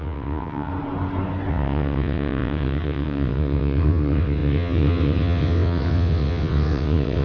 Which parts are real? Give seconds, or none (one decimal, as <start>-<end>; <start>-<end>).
0.7-1.5